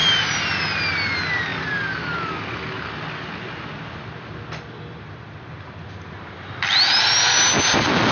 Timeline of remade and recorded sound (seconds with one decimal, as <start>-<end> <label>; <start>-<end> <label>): 0.0-8.1 recorded